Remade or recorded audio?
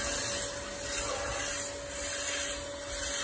recorded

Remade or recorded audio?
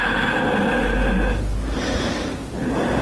recorded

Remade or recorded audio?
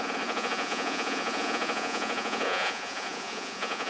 remade